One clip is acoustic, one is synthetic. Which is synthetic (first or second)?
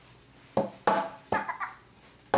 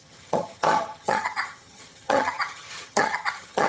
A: second